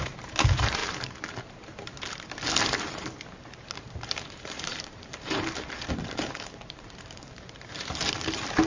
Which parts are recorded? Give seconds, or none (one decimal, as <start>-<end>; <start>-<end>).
0.8-3.3

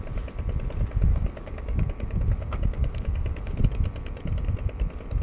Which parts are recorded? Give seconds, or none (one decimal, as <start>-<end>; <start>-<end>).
0.0-1.1; 3.6-5.2

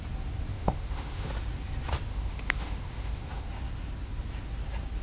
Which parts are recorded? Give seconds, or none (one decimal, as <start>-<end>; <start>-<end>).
0.0-0.5; 1.3-2.1; 3.5-5.0

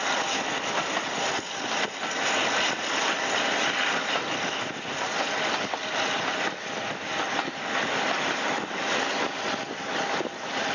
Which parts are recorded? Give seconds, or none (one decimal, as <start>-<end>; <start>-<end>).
0.0-10.7

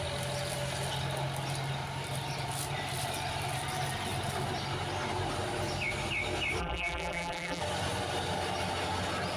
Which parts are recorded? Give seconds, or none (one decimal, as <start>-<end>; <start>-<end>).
0.0-6.6; 7.6-9.4

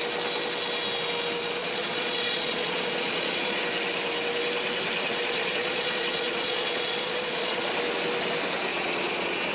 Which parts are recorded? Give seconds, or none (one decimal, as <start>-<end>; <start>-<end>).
0.0-1.6; 3.6-5.2; 7.7-8.7

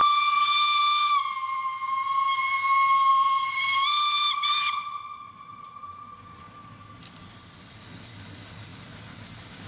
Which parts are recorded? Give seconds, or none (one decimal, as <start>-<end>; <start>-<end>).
0.0-3.1; 7.0-9.7

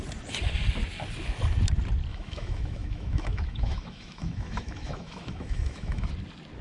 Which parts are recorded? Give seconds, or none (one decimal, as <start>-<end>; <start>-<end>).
0.0-2.1; 6.1-6.6